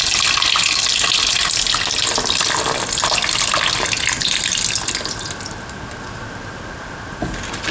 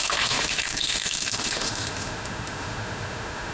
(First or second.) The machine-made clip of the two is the second